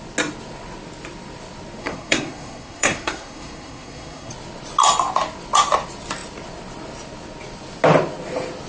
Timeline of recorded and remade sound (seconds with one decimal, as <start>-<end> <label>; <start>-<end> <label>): 0.0-1.8 recorded; 1.8-4.3 remade; 4.3-8.7 recorded